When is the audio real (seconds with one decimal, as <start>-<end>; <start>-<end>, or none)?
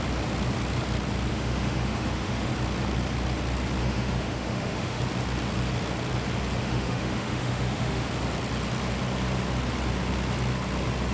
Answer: 0.0-1.3; 2.5-3.8; 5.0-6.6; 8.1-11.1